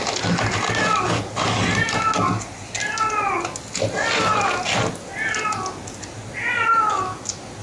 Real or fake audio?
real